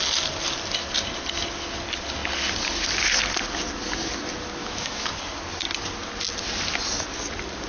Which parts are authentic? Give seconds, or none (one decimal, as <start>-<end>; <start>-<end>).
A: 0.0-4.6; 5.1-7.7